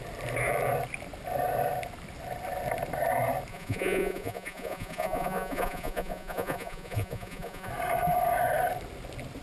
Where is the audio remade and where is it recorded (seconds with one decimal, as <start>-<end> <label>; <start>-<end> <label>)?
0.0-3.5 recorded; 3.5-7.7 remade; 7.7-9.4 recorded